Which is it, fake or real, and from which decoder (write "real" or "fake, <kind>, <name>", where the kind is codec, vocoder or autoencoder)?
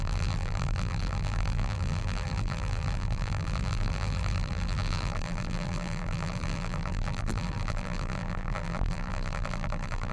fake, vocoder, BigVGAN v2